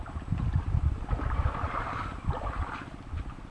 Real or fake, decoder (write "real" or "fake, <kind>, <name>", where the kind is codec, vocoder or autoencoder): real